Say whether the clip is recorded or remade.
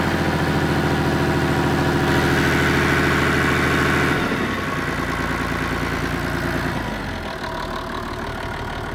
recorded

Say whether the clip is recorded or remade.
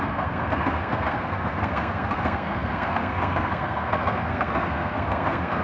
remade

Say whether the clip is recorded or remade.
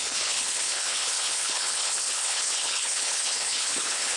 remade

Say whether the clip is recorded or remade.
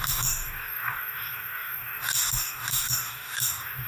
remade